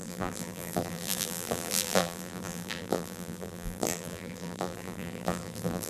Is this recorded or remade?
remade